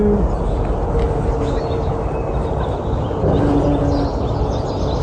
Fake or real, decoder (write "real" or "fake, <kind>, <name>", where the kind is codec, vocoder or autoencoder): real